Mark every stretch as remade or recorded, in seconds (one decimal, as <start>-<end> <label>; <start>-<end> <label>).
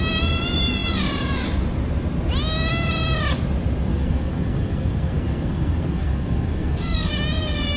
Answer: 0.0-3.9 recorded; 3.9-7.1 remade; 7.1-7.8 recorded